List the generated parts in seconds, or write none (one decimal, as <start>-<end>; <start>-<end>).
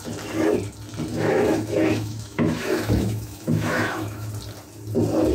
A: 1.1-4.3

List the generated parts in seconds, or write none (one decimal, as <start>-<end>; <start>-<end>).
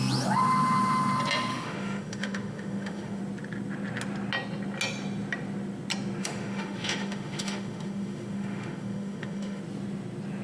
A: 1.5-3.2; 6.2-9.6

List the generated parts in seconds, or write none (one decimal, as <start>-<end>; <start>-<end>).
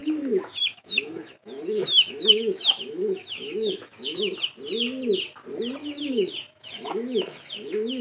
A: 0.0-4.3; 5.8-8.0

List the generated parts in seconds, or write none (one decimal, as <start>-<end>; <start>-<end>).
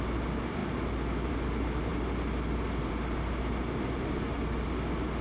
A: none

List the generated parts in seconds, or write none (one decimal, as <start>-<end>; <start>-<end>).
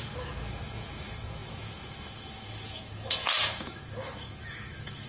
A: 0.0-5.1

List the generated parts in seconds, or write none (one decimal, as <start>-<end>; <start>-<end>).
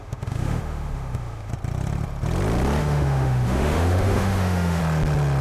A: 0.0-1.5; 2.8-4.8